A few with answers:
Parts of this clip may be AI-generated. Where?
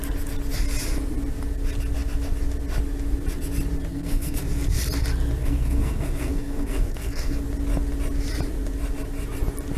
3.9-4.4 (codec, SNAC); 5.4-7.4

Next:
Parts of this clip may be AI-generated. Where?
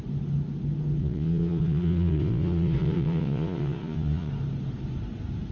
1.0-4.3 (vocoder, Vocos)